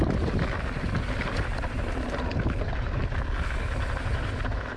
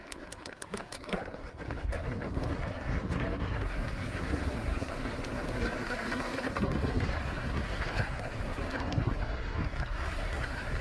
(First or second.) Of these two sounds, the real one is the first